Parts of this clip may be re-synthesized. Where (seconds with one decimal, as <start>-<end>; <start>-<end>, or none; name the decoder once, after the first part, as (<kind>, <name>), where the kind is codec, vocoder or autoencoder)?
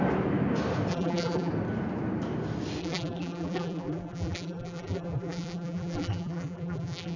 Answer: 0.9-1.5 (vocoder, BigVGAN v2); 2.8-7.2